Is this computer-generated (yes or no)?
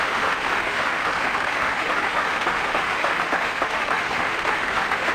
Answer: yes